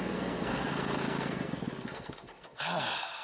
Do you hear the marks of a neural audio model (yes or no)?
yes